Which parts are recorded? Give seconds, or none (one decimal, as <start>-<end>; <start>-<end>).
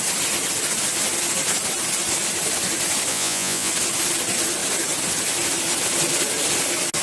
0.0-3.1; 3.7-7.0